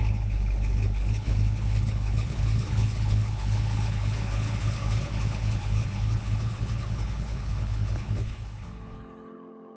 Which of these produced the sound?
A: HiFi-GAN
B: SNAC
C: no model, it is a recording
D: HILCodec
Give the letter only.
D